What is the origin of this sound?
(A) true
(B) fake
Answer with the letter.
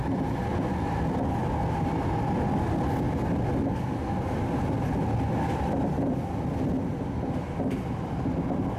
A